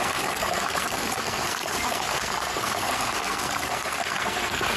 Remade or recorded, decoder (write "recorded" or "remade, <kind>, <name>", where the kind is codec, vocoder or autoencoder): remade, codec, SNAC